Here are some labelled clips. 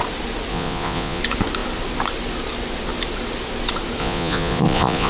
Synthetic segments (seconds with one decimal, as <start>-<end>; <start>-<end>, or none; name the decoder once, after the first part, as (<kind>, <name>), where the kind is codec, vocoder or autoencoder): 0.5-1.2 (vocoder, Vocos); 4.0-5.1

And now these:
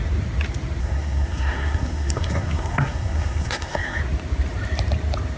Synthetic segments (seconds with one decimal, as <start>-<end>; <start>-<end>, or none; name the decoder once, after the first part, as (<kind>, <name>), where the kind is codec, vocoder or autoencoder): 0.8-4.0 (codec, SNAC)

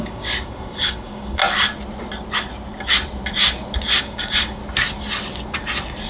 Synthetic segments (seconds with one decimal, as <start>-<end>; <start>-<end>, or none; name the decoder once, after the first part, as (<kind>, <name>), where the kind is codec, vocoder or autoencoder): 0.0-1.4 (codec, DAC); 4.0-4.6

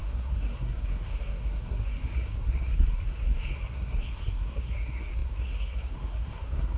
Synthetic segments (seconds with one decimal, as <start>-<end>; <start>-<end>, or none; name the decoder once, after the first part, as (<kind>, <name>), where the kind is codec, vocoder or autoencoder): 0.0-6.8 (codec, SNAC)

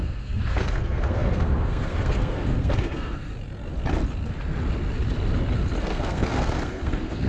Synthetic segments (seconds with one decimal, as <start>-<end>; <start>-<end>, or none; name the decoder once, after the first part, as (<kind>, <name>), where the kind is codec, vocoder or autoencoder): 0.0-3.3 (codec, SNAC); 5.8-7.3